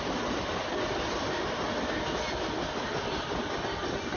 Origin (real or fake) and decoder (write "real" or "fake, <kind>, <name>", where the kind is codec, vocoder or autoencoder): real